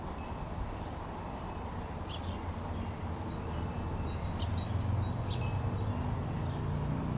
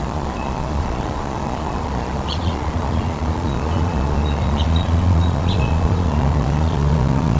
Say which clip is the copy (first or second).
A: second